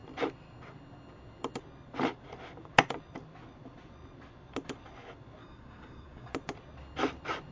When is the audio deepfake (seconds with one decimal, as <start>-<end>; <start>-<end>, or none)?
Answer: 5.4-6.3